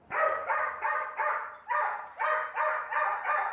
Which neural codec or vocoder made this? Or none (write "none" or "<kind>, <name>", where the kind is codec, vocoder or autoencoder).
none